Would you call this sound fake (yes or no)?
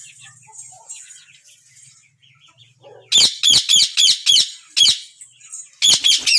no